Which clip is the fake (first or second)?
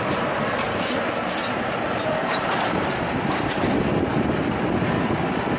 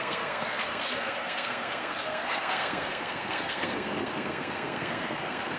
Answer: second